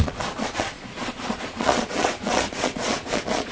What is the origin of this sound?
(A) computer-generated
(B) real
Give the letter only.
A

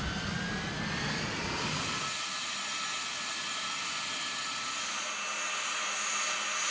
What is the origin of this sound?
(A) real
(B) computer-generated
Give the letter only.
A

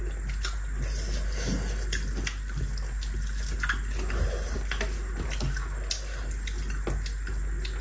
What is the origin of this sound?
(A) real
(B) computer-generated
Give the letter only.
A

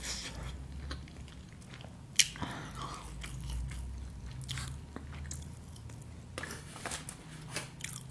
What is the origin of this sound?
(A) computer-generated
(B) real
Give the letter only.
B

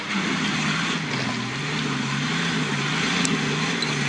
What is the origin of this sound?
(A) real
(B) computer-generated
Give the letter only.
A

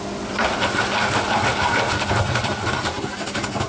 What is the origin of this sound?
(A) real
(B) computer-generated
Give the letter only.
A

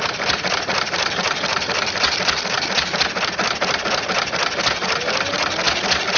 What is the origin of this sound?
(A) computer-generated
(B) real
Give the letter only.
B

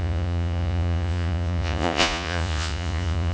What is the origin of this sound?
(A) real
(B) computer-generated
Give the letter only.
B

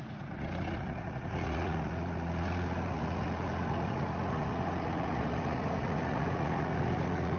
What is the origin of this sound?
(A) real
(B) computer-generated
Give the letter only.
B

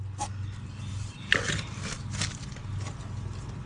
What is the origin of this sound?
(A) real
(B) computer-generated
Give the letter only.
A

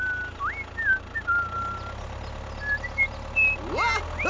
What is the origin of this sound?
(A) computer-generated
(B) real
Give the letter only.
B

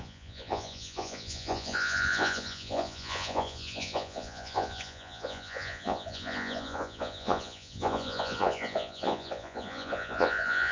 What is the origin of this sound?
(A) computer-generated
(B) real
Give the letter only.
A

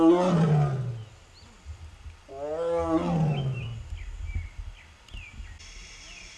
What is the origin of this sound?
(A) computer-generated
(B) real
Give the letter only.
B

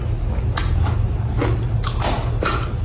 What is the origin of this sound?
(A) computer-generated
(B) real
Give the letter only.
B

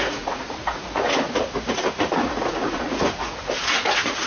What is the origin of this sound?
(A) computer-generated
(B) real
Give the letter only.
A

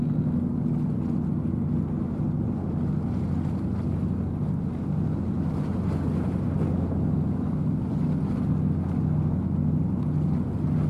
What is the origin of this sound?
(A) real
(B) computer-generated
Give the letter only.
A